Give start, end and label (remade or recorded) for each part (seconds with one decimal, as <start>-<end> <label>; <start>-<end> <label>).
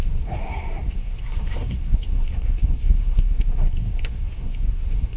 0.0-5.2 remade